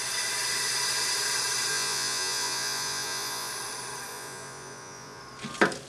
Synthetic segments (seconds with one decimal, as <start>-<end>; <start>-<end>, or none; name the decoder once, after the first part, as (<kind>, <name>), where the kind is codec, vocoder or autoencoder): 1.7-3.5 (vocoder, Vocos); 4.1-5.2